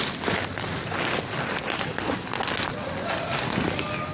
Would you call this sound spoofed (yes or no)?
no